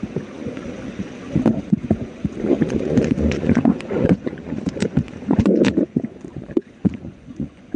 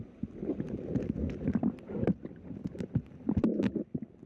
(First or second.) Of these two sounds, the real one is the second